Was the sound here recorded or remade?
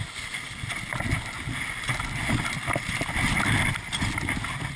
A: recorded